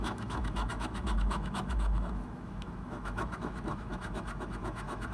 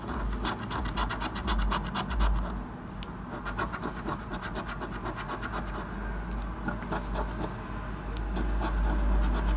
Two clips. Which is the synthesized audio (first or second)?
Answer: first